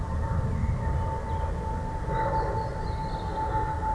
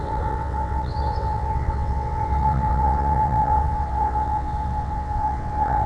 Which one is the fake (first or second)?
second